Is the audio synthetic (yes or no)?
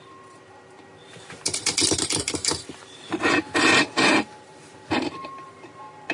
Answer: yes